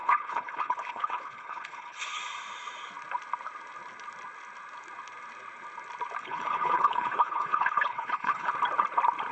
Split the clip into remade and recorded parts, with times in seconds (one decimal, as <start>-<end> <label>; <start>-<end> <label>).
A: 0.0-2.2 remade; 2.2-6.2 recorded; 6.2-8.5 remade; 8.5-9.3 recorded